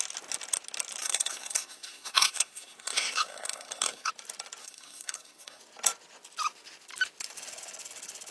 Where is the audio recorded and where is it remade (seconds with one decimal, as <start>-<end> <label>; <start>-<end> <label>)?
0.0-1.0 recorded; 1.0-4.1 remade; 4.1-4.6 recorded; 4.6-5.6 remade; 5.6-8.3 recorded